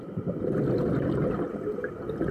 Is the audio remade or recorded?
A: recorded